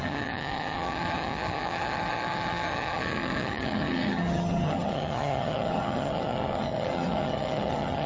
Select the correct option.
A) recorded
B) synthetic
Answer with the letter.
B